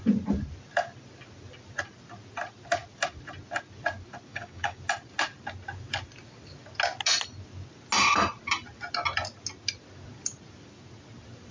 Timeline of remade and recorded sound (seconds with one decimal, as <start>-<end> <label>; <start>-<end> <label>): 0.0-4.3 recorded; 4.3-4.8 remade; 4.8-11.5 recorded